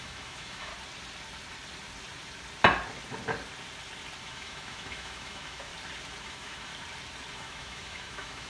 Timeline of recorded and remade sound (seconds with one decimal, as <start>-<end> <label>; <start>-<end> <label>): 0.0-0.7 remade; 0.7-4.2 recorded; 4.2-5.7 remade; 5.7-6.2 recorded; 6.2-6.7 remade; 6.7-7.3 recorded; 7.3-8.5 remade